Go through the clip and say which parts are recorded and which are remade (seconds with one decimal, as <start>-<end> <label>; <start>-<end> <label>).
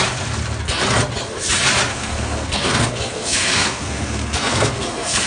0.0-1.9 recorded; 1.9-5.3 remade